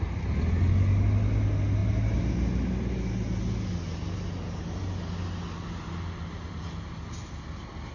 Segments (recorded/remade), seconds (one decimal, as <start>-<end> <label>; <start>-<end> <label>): 0.0-7.9 recorded